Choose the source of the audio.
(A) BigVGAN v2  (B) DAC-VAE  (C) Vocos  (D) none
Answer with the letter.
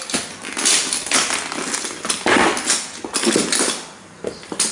D